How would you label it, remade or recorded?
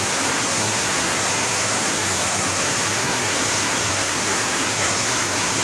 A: remade